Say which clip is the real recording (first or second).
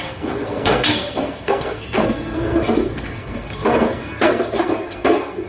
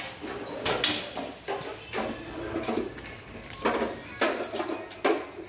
second